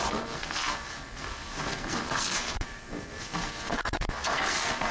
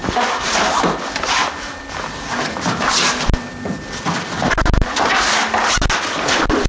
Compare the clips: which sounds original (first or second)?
second